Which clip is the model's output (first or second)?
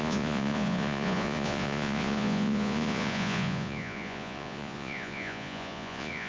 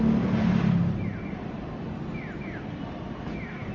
first